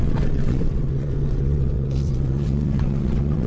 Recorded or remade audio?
remade